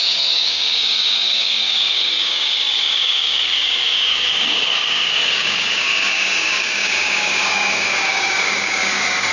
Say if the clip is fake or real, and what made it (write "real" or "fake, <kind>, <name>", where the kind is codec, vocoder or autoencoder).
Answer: fake, codec, DAC